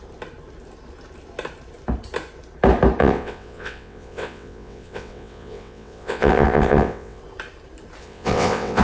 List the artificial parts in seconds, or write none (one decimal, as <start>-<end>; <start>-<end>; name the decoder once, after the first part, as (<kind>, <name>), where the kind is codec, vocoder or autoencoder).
3.0-7.2 (vocoder, WaveNeXt); 8.0-8.8